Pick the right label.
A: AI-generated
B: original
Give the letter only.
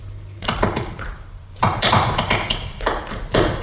A